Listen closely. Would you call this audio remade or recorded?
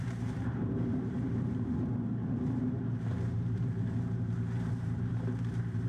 remade